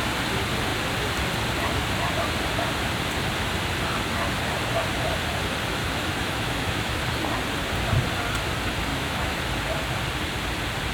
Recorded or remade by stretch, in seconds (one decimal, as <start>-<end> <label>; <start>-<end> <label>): 0.0-5.8 recorded; 5.8-7.0 remade; 7.0-8.9 recorded; 8.9-9.4 remade; 9.4-10.9 recorded